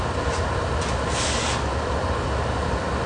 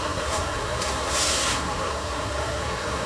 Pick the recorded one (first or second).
first